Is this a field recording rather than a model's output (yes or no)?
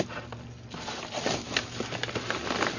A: yes